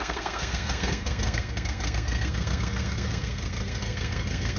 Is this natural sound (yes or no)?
no